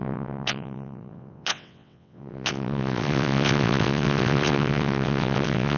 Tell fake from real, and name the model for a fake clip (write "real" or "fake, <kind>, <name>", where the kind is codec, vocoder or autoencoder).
fake, vocoder, WaveNeXt